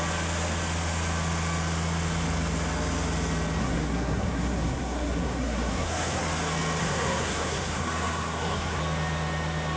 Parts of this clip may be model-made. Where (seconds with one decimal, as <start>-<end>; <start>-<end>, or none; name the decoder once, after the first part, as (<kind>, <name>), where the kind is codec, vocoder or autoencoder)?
3.6-6.2 (codec, SNAC); 6.8-8.8